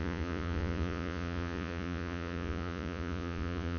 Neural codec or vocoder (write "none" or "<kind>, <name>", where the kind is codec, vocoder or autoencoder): vocoder, Vocos